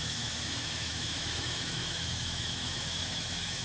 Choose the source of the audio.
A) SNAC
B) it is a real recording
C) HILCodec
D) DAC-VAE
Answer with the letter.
D